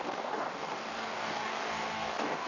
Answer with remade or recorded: remade